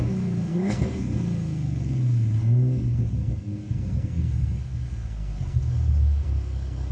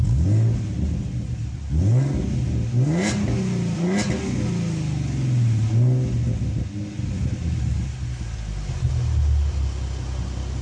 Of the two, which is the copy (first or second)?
first